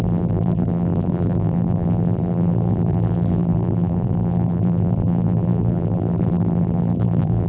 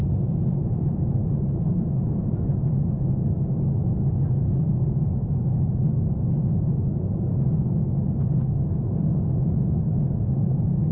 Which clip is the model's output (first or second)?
first